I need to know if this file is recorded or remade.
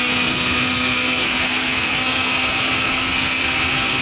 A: remade